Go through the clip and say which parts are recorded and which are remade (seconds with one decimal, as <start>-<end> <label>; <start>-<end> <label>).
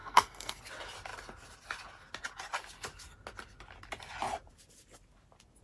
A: 0.0-0.6 remade; 0.6-5.6 recorded